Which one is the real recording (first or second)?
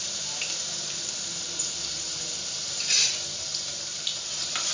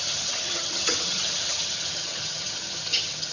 first